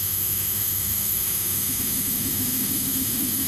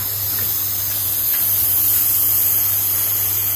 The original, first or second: second